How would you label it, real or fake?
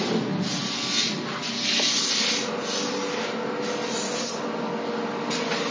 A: real